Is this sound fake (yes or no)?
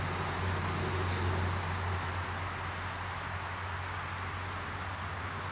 no